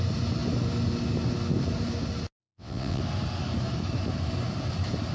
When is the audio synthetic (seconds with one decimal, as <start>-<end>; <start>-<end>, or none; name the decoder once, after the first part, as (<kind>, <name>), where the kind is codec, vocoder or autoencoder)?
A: 2.4-3.0 (vocoder, WaveNeXt)